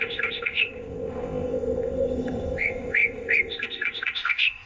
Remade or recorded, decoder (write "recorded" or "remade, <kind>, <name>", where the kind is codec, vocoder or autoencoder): remade, codec, ZipCodec